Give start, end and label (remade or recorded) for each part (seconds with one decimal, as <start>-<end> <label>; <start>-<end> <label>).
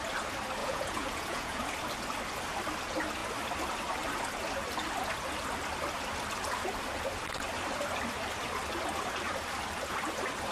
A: 0.0-0.6 recorded; 0.6-1.6 remade; 1.6-10.5 recorded